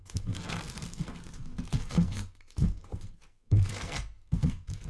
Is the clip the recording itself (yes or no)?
no